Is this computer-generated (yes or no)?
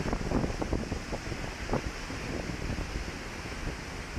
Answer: no